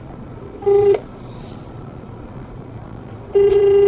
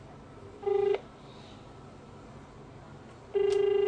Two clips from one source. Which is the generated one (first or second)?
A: first